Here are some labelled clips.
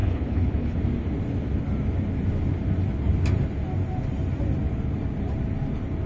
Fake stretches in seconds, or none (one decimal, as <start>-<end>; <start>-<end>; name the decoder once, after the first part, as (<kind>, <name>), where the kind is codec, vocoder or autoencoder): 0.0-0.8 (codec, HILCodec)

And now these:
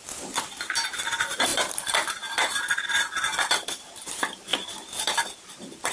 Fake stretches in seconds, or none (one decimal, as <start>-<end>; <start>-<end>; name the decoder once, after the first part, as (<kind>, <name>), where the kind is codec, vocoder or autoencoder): 0.0-1.5 (vocoder, BigVGAN v2); 2.6-4.5; 5.0-5.9

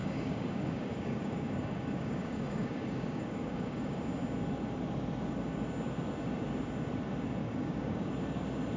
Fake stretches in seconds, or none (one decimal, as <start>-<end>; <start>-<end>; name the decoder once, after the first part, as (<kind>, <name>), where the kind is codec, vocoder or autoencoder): 0.0-4.0 (codec, DAC); 7.4-8.1